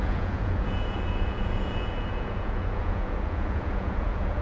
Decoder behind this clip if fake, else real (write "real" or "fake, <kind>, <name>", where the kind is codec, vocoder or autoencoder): fake, vocoder, Vocos